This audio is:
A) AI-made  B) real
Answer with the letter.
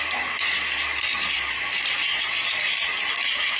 B